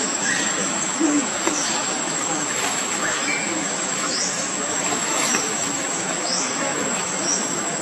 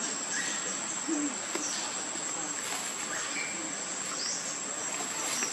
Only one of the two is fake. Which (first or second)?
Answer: first